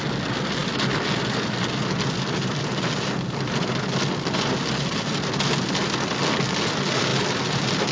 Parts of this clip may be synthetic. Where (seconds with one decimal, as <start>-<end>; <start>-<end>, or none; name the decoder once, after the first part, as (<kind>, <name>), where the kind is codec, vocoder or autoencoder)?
none